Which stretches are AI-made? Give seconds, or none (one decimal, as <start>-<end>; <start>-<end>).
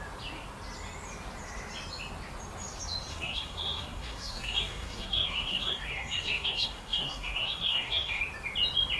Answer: 3.1-8.2